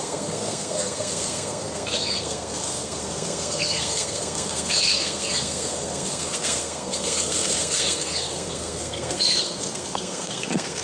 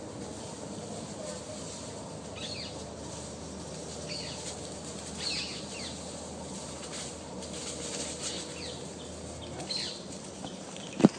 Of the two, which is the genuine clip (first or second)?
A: second